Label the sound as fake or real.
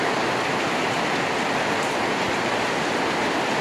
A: real